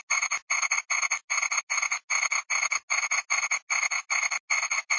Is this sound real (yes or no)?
yes